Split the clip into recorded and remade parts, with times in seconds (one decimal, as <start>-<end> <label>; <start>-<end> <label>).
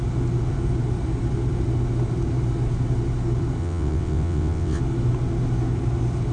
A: 0.0-3.6 recorded; 3.6-4.8 remade; 4.8-6.3 recorded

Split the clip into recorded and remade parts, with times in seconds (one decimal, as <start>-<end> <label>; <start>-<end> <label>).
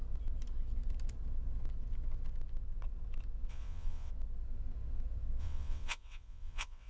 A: 0.0-3.5 recorded; 3.5-4.1 remade; 4.1-5.4 recorded; 5.4-6.9 remade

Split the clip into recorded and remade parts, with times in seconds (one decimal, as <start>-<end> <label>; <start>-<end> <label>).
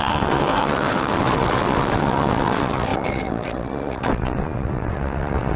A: 0.0-5.6 remade